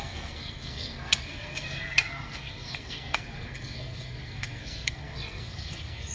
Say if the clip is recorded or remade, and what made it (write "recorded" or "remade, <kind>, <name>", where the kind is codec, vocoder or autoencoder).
remade, codec, SNAC